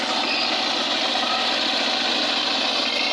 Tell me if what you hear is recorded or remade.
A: recorded